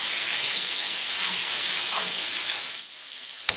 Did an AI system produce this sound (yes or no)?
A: yes